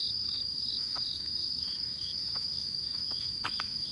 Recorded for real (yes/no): no